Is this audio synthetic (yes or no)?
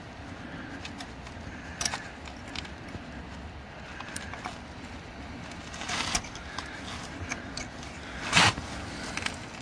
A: no